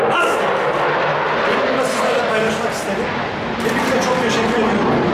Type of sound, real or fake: real